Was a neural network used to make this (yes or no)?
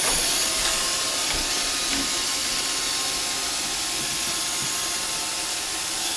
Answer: no